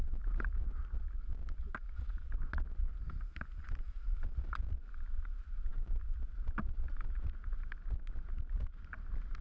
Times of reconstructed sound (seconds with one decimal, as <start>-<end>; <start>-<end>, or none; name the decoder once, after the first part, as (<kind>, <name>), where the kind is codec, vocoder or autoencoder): none